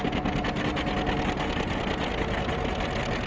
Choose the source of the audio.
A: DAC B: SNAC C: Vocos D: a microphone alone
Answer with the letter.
D